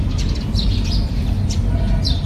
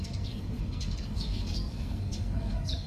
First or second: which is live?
first